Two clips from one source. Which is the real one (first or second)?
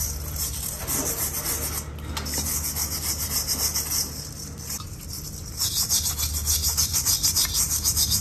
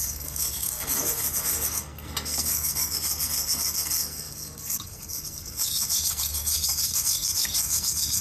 first